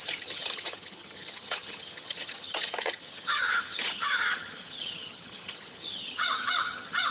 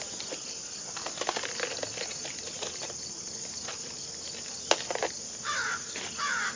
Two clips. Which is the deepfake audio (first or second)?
first